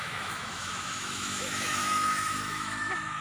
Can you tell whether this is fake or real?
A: fake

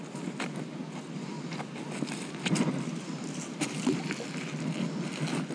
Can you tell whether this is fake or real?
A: real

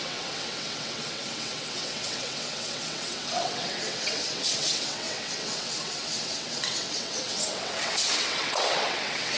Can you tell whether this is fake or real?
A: fake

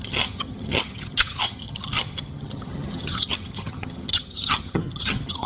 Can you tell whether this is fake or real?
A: fake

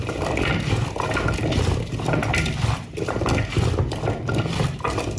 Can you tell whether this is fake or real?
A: fake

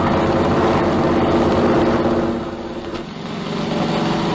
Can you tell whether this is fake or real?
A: real